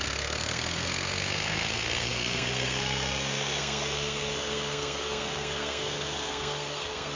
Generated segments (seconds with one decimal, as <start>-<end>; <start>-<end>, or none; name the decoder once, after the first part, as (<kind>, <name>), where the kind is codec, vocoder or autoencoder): 0.0-7.2 (codec, SNAC)